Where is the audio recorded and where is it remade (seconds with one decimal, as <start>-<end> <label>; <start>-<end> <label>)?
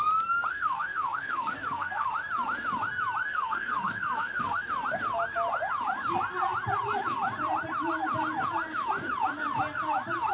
0.0-0.5 recorded; 0.5-2.1 remade; 2.1-3.3 recorded; 3.3-4.7 remade; 4.7-10.3 recorded